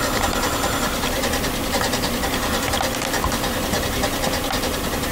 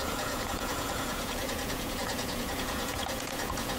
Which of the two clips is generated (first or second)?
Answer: second